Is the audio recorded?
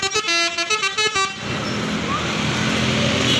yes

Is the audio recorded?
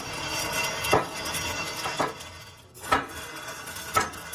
yes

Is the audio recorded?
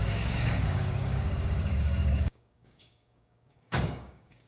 no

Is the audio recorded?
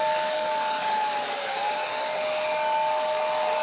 no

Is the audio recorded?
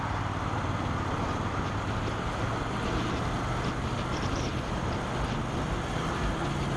yes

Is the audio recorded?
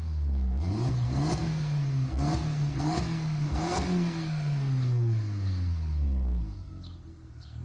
no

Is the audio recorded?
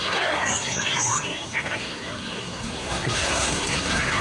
no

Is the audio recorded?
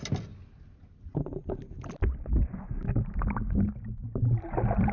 yes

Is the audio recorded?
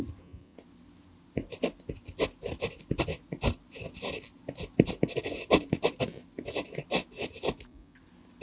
yes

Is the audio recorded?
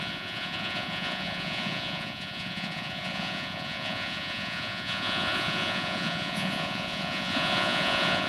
no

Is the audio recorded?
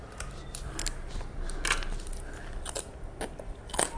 yes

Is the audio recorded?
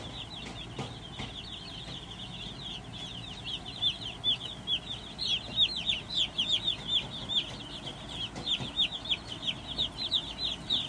yes